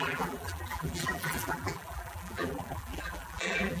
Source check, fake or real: fake